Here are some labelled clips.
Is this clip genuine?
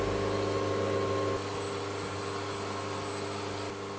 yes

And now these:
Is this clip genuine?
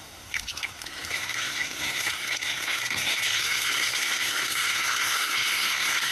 no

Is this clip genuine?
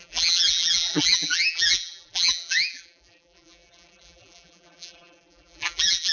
no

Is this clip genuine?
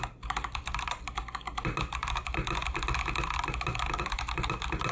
yes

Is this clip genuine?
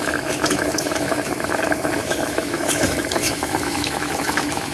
no